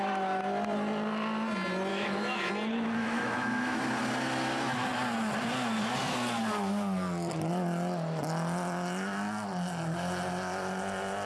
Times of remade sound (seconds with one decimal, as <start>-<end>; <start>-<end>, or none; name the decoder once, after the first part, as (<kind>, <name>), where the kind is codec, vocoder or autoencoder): 1.9-2.5 (autoencoder, DAC-VAE); 3.0-3.8

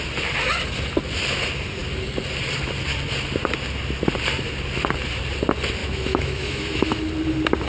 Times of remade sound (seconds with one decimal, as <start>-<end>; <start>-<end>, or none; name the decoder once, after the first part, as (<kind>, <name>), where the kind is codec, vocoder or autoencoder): 5.8-7.0 (autoencoder, DAC-VAE)

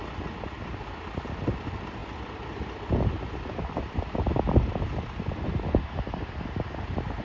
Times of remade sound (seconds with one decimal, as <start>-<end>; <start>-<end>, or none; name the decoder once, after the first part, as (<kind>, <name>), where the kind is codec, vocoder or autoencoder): none

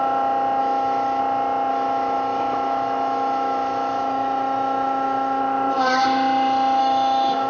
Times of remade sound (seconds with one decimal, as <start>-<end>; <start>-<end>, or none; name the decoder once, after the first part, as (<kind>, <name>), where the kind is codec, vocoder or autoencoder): 0.6-1.2 (autoencoder, DAC-VAE); 1.7-5.4; 6.8-7.5

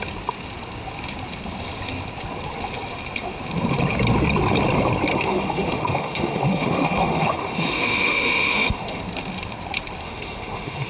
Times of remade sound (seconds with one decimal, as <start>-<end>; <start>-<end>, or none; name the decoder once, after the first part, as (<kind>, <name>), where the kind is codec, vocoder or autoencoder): 5.1-9.0 (autoencoder, DAC-VAE); 10.0-10.9

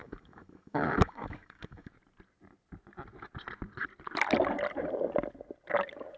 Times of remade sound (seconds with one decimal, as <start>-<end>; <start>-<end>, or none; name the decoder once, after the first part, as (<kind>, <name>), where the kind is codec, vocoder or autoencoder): 0.0-1.9 (autoencoder, DAC-VAE)